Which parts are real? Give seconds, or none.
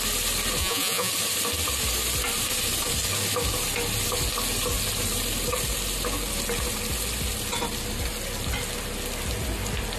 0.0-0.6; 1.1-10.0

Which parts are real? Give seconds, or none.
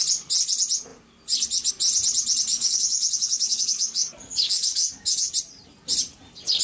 0.0-2.5; 5.3-6.6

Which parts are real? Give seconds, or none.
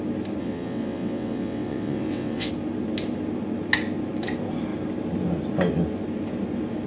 0.0-0.4; 2.5-6.9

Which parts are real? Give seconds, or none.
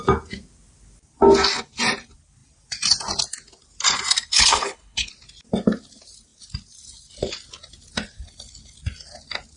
0.0-4.3; 5.1-9.6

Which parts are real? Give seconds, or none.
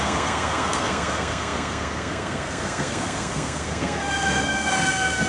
none